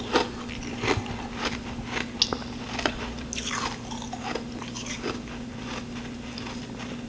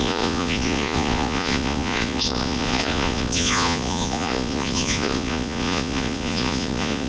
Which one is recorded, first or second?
first